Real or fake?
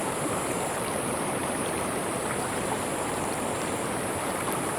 fake